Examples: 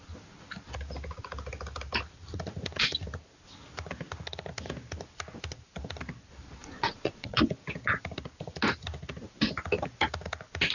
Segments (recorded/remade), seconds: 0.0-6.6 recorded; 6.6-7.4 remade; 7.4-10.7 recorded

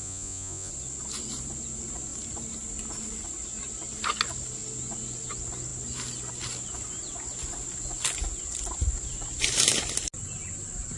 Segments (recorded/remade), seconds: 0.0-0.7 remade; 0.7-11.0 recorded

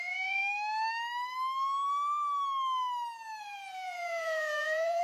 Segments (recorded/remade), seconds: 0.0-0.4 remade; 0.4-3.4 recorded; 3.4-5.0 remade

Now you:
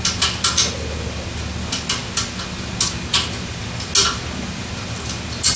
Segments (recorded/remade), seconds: 0.0-5.6 recorded

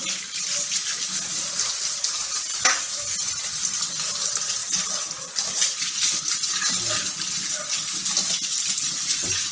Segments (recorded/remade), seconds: 0.0-9.5 recorded

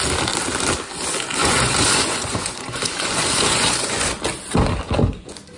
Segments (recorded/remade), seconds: 0.0-1.4 recorded; 1.4-4.1 remade; 4.1-5.0 recorded; 5.0-5.6 remade